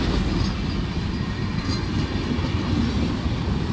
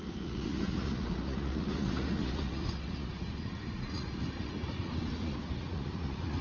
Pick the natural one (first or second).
first